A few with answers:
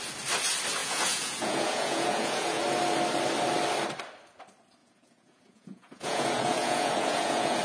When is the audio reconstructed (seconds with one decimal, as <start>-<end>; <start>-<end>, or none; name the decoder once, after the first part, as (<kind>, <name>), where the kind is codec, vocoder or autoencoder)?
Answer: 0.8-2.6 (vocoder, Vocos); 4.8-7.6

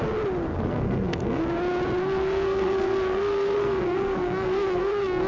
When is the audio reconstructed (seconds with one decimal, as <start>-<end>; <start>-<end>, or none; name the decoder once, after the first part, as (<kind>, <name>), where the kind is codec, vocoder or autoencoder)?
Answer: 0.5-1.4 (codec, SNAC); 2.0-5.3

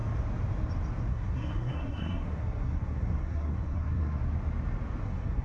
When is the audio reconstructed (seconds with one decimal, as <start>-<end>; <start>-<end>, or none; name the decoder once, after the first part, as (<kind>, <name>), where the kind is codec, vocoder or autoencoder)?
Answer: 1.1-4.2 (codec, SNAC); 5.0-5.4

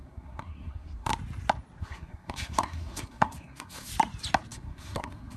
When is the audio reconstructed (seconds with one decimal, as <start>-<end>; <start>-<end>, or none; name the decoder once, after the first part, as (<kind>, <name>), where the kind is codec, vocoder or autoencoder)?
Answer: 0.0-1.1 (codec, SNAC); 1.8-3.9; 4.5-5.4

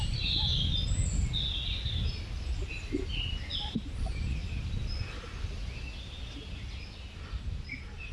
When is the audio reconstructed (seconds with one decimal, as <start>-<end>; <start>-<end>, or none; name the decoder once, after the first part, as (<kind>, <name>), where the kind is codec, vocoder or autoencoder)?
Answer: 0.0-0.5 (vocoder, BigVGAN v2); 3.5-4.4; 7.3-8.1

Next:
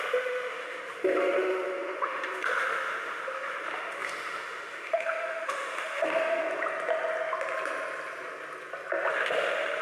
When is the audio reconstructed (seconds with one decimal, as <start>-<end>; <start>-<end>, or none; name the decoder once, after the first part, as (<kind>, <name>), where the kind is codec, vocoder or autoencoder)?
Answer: 0.0-6.4 (autoencoder, DAC-VAE); 9.1-9.8